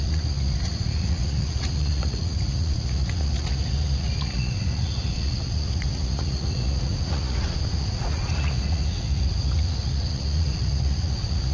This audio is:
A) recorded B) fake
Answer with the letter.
B